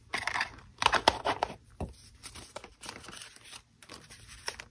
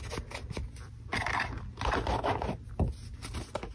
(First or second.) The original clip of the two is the second